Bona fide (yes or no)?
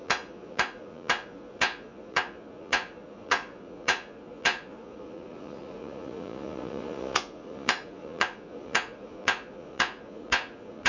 no